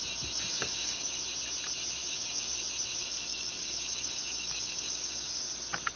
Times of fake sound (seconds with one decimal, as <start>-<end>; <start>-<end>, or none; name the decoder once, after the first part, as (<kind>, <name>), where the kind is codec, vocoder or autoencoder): 0.5-1.2 (codec, DAC); 2.0-2.6; 3.0-5.4